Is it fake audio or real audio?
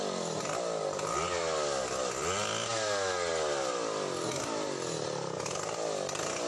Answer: real